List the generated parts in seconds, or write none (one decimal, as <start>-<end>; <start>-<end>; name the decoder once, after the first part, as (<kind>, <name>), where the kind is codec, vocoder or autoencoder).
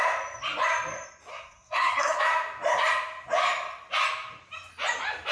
1.3-2.2 (codec, SNAC)